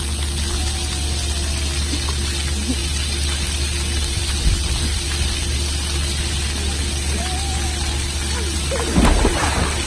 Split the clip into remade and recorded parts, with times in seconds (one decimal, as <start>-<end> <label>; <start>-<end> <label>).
0.0-9.9 recorded